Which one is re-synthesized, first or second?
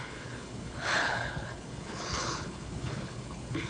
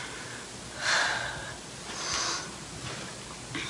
first